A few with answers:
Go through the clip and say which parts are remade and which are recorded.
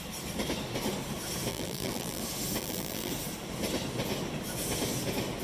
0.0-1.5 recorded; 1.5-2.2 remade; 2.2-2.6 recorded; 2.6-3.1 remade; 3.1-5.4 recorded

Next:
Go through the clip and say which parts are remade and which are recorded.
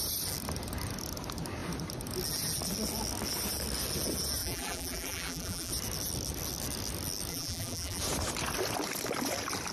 0.0-4.4 recorded; 4.4-5.7 remade; 5.7-7.3 recorded; 7.3-8.0 remade; 8.0-9.7 recorded